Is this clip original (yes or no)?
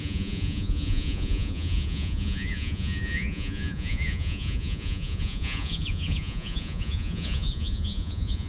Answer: no